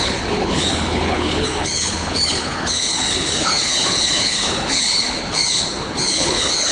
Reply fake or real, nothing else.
fake